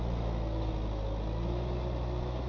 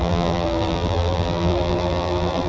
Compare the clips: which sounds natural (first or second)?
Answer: first